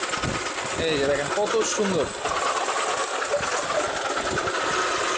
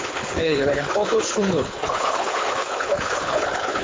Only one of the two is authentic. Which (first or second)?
first